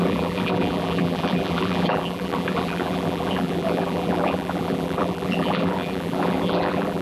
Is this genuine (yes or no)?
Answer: no